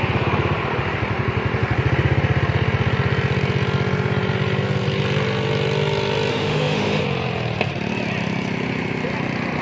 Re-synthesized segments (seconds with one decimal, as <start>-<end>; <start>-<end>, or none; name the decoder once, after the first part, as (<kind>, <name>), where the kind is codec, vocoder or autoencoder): 6.3-7.0 (autoencoder, DAC-VAE)